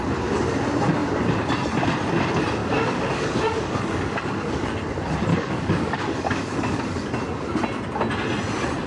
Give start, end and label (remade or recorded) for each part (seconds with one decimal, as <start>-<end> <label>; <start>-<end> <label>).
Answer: 0.0-2.6 recorded; 2.6-4.7 remade; 4.7-5.3 recorded; 5.3-7.1 remade; 7.1-8.9 recorded